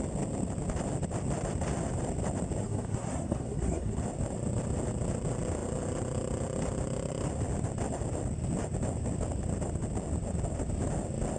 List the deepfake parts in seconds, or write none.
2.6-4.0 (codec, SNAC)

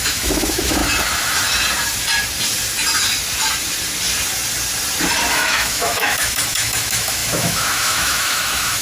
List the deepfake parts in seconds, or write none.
0.0-0.8 (autoencoder, DAC-VAE); 5.3-8.8